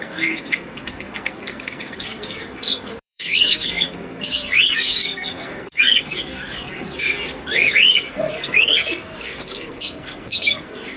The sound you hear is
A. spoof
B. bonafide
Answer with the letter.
A